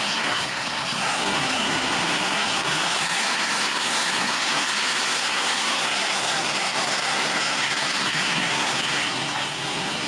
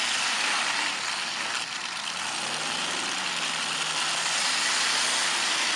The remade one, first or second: first